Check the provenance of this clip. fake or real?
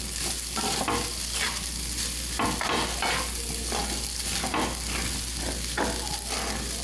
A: real